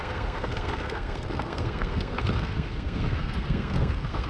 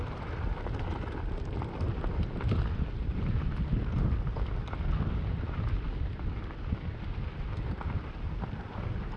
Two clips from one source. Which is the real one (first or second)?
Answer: second